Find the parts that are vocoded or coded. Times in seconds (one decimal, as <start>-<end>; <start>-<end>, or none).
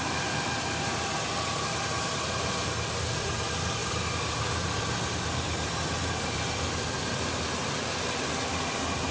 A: none